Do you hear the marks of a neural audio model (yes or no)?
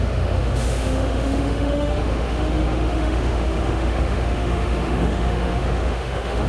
yes